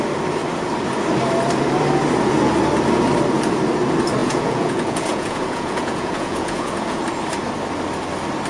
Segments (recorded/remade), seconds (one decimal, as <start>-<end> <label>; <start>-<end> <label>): 0.0-4.2 recorded; 4.2-7.0 remade; 7.0-8.5 recorded